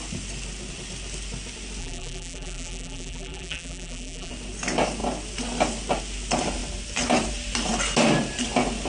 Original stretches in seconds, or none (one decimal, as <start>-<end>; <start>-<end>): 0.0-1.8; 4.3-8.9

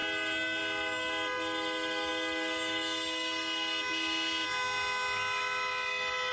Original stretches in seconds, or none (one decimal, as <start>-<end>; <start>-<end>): 0.0-6.3

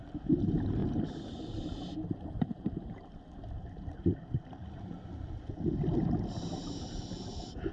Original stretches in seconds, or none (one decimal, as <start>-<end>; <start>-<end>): 0.0-0.8; 3.2-7.7

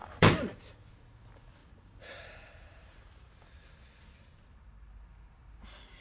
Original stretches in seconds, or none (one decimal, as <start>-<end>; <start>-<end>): 0.9-1.6; 3.3-6.0

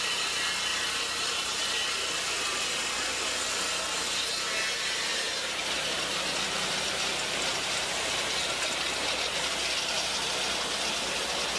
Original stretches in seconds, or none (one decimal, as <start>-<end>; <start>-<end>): 0.0-0.7; 3.6-5.1; 8.8-11.6